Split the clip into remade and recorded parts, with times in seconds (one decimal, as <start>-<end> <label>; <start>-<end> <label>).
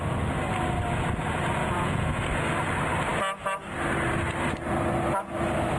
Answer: 0.0-1.6 recorded; 1.6-2.2 remade; 2.2-5.8 recorded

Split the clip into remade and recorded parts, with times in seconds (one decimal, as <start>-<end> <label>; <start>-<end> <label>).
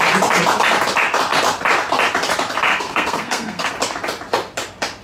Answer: 0.0-2.7 recorded; 2.7-3.7 remade; 3.7-5.0 recorded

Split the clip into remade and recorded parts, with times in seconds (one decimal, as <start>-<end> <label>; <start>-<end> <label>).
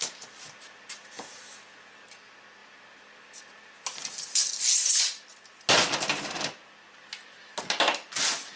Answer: 0.0-8.6 recorded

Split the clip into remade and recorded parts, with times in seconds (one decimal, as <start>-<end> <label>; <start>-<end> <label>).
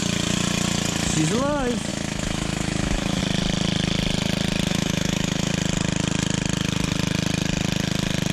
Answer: 0.0-1.9 recorded; 1.9-3.2 remade; 3.2-4.7 recorded; 4.7-5.5 remade; 5.5-8.3 recorded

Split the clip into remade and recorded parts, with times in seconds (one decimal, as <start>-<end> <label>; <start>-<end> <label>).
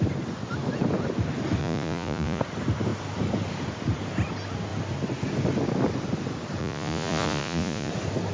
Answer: 0.0-1.6 recorded; 1.6-2.4 remade; 2.4-6.6 recorded; 6.6-7.9 remade; 7.9-8.3 recorded